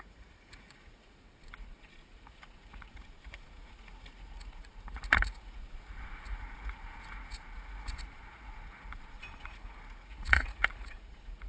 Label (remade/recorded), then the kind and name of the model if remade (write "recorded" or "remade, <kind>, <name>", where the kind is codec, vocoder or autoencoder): remade, vocoder, Vocos